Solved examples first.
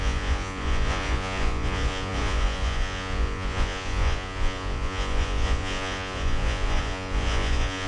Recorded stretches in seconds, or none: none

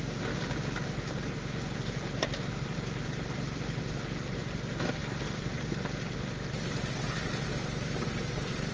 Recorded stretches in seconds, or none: 0.0-8.7

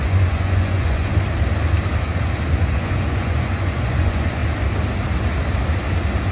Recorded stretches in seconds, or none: 1.1-2.5; 4.4-6.3